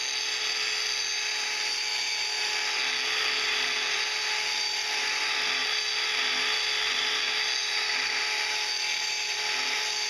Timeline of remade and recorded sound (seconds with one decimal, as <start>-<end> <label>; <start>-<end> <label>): 0.0-10.1 recorded